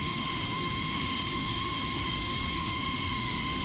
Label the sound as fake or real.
fake